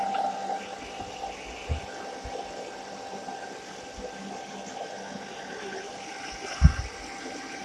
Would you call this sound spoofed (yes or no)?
no